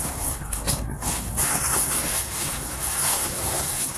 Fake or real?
fake